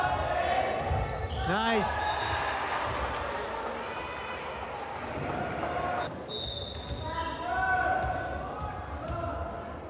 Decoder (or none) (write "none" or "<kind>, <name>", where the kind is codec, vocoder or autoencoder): none